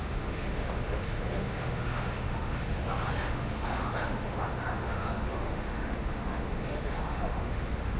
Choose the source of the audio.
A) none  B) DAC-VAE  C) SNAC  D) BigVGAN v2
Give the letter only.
B